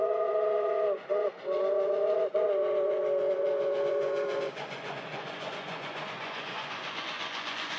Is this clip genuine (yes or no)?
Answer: no